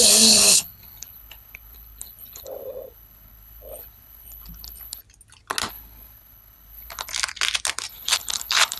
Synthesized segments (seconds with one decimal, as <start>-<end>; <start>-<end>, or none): 0.0-5.0; 5.7-7.1; 7.9-8.8